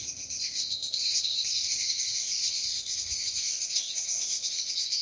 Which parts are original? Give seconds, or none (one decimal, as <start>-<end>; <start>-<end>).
none